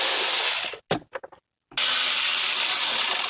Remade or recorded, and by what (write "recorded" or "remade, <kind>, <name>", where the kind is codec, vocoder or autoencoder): recorded